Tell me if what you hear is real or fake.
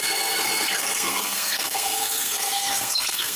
fake